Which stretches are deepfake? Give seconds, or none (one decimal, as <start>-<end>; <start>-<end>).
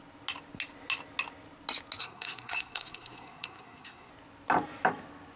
2.0-4.1